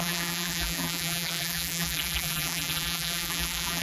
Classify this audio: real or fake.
fake